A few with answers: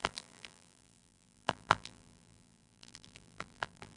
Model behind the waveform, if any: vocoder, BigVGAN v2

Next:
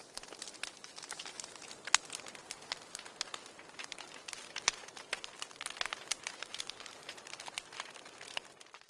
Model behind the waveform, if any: none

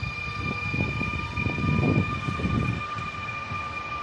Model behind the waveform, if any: none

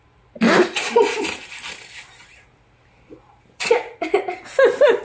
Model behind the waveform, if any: none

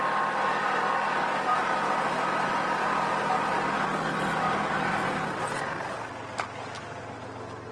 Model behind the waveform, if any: none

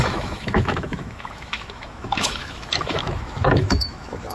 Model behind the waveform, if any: autoencoder, DAC-VAE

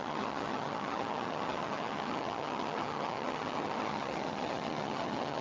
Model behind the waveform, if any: vocoder, HiFi-GAN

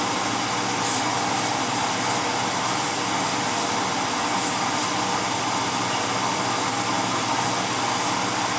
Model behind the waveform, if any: none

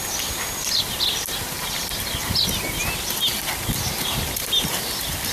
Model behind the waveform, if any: none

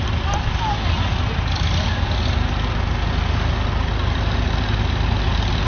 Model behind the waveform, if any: none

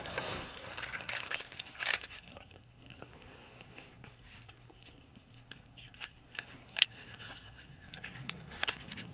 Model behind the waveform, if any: codec, SNAC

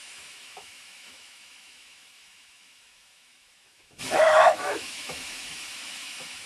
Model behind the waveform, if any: autoencoder, DAC-VAE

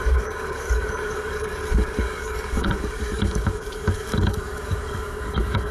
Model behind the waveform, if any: codec, DAC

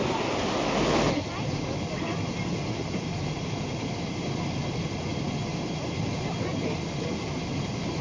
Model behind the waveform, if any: none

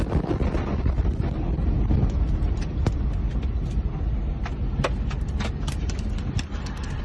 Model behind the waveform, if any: none